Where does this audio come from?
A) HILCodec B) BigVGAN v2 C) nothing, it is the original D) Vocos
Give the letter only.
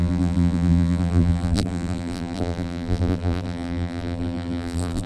B